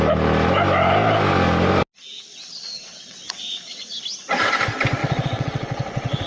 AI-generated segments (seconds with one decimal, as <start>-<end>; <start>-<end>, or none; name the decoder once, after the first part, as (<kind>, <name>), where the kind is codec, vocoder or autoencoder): 2.3-4.0 (vocoder, WaveNeXt); 5.0-6.3